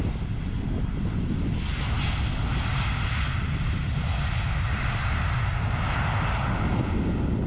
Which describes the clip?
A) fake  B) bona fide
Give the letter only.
B